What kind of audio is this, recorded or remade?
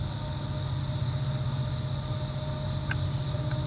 recorded